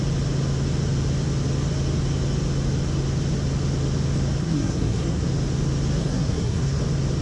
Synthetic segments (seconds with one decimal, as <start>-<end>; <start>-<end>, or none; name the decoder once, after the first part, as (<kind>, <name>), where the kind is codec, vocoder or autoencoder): 4.4-5.3 (codec, SNAC); 6.0-6.8